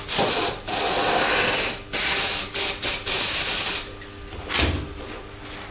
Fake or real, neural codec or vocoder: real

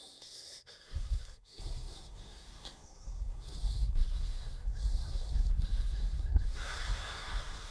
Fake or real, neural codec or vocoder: fake, codec, SNAC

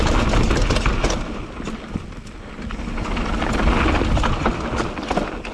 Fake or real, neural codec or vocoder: real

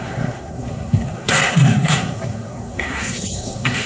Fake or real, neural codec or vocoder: fake, codec, SNAC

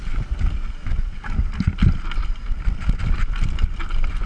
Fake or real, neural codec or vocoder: real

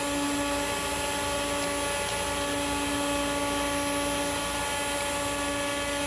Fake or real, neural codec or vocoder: real